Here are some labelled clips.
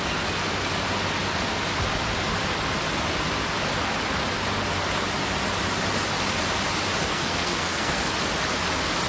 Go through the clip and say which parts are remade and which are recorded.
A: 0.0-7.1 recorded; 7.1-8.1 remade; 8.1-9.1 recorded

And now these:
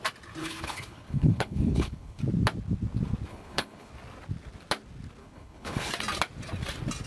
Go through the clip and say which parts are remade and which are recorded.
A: 0.0-0.4 recorded; 0.4-2.2 remade; 2.2-3.3 recorded; 3.3-3.9 remade; 3.9-5.2 recorded; 5.2-5.9 remade; 5.9-7.1 recorded

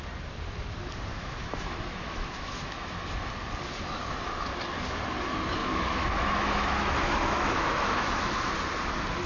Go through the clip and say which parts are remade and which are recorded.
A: 0.0-1.1 recorded; 1.1-3.3 remade; 3.3-5.6 recorded; 5.6-8.3 remade; 8.3-9.3 recorded

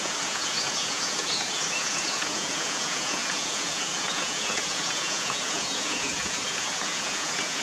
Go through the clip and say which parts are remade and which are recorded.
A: 0.0-7.6 remade